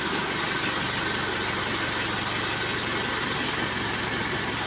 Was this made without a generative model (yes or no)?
yes